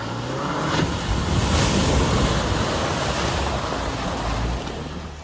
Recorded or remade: recorded